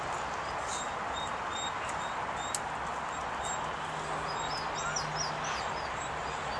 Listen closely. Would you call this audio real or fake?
real